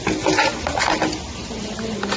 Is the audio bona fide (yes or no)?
yes